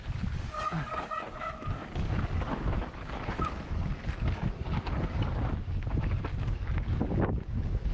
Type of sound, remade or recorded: remade